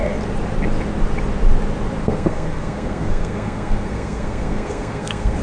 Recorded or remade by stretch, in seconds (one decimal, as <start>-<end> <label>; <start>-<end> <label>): 0.0-2.0 recorded; 2.0-5.4 remade